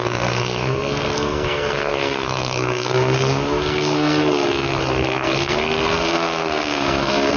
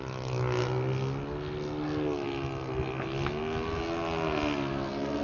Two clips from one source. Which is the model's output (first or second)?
first